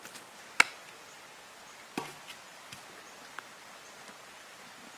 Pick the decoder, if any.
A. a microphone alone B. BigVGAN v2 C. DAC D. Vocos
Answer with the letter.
A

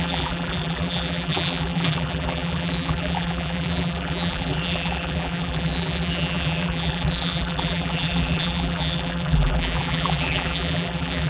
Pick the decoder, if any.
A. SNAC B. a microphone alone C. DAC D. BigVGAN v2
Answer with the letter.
D